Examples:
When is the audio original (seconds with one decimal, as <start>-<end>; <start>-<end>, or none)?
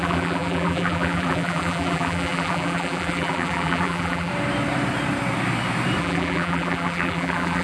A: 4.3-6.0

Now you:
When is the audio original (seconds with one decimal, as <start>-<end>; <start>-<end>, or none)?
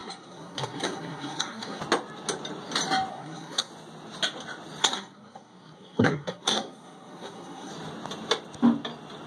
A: 1.8-3.1; 3.7-4.8; 7.7-9.3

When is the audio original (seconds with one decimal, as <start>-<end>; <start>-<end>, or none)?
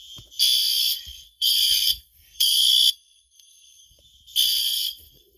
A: 0.0-0.8; 4.0-4.6